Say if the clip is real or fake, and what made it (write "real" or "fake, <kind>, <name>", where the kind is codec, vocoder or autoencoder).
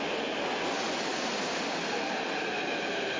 real